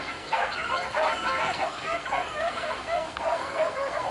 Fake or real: fake